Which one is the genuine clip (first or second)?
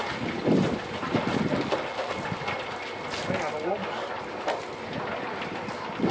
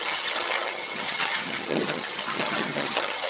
first